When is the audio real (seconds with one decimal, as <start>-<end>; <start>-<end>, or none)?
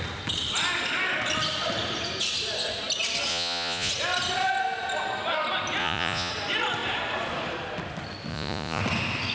0.0-3.3; 3.9-5.8; 6.3-8.3; 8.8-9.3